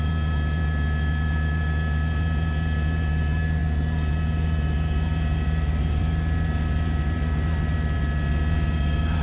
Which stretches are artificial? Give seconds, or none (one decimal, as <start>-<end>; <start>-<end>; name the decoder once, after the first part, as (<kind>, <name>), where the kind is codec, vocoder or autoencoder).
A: none